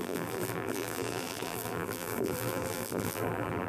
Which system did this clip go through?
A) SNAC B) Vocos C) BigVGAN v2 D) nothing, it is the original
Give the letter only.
C